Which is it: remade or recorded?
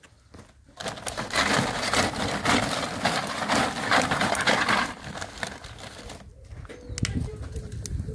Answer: recorded